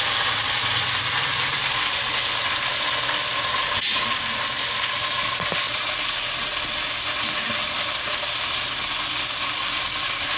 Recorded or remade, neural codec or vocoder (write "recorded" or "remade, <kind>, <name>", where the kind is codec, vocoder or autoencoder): recorded